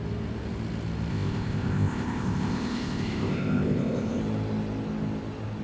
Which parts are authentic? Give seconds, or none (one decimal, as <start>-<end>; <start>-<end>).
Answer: 0.0-1.1; 4.2-5.6